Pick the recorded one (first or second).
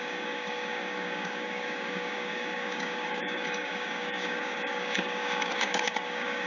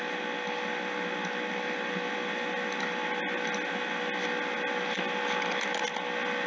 second